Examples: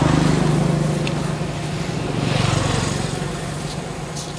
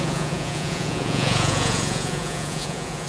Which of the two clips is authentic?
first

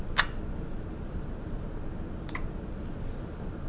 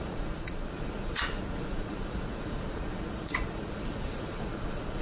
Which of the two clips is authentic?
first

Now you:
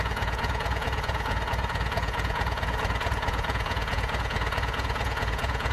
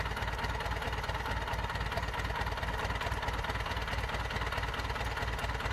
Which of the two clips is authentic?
second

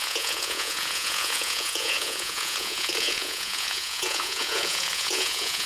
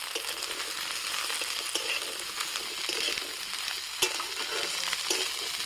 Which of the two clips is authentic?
second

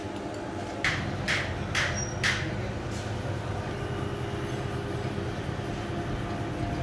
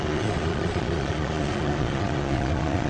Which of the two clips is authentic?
first